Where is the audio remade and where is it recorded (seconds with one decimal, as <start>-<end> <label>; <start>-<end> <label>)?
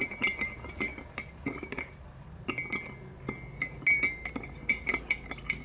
0.0-0.9 remade; 0.9-4.3 recorded; 4.3-5.6 remade